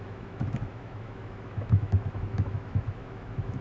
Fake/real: fake